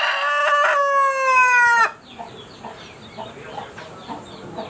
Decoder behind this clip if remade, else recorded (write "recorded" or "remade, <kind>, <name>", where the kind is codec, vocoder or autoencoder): recorded